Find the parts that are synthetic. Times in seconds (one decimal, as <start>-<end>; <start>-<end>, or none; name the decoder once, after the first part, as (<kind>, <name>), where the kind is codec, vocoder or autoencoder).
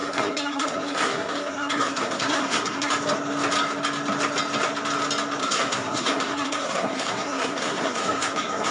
0.0-2.9 (codec, SNAC); 5.4-8.7